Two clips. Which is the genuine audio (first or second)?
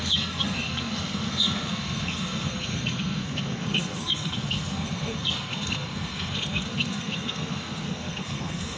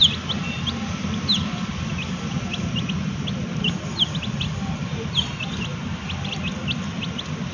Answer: second